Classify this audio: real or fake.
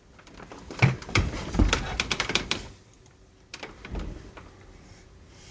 fake